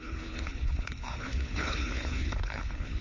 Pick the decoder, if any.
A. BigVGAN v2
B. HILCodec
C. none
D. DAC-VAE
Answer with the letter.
B